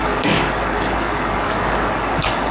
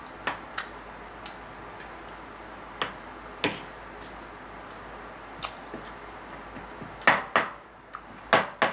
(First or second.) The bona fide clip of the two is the second